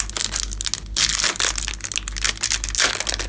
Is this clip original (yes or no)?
yes